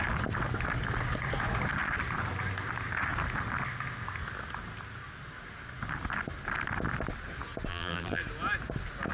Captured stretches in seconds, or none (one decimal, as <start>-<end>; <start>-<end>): 0.0-7.7; 8.2-9.1